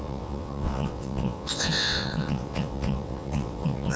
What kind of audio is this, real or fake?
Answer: fake